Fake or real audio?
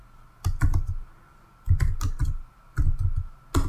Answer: real